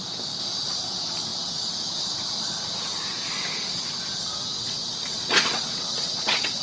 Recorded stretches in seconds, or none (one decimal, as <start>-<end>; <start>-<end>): 0.0-4.5